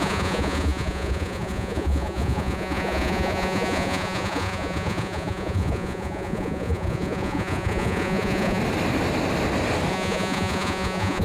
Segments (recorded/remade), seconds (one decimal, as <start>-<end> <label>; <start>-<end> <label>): 0.0-8.6 remade; 8.6-9.9 recorded; 9.9-11.2 remade

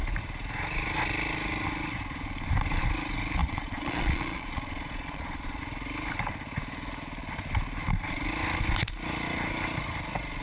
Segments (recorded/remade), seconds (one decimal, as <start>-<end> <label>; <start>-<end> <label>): 0.0-3.4 recorded; 3.4-5.6 remade; 5.6-10.4 recorded

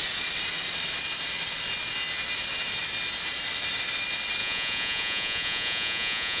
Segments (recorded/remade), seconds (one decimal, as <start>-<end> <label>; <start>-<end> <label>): 0.0-4.4 recorded; 4.4-6.4 remade

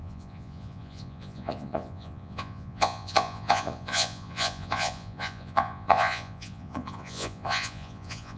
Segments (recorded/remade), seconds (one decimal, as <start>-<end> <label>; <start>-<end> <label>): 0.0-8.4 remade

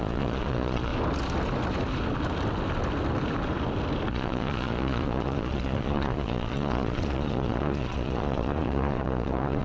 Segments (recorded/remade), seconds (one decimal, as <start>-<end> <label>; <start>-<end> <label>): 0.0-0.9 remade; 0.9-4.1 recorded; 4.1-9.6 remade

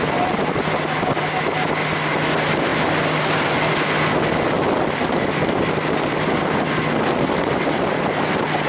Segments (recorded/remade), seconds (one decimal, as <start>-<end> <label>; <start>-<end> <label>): 0.0-8.7 recorded

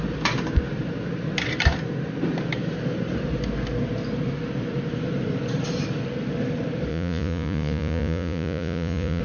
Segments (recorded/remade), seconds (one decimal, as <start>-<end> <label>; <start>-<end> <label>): 0.0-6.9 recorded; 6.9-9.2 remade